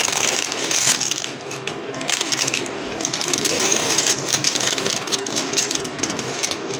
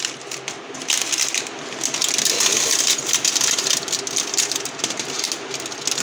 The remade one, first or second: first